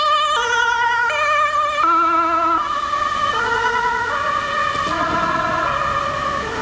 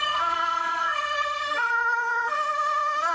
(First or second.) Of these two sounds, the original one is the first